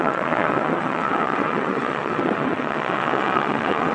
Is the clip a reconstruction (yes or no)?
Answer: yes